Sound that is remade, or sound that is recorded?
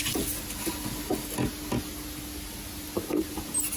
recorded